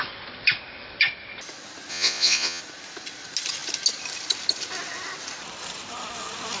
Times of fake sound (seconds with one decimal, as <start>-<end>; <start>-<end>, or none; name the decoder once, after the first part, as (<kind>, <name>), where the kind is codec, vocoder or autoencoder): 1.9-2.6 (vocoder, Vocos)